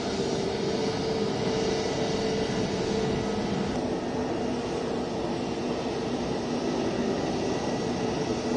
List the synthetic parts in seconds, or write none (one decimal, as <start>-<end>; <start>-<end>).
none